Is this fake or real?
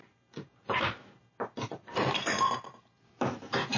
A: real